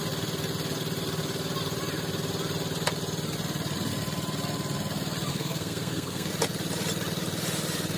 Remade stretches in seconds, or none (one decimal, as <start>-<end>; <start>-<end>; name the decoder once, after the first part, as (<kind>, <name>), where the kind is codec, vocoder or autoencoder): 5.3-6.3 (codec, SNAC)